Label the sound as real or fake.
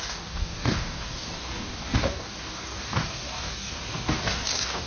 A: fake